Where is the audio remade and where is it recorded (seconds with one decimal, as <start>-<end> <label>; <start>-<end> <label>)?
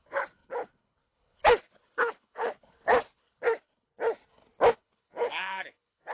0.0-3.9 remade; 3.9-4.7 recorded; 4.7-6.1 remade